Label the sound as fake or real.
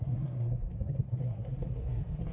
fake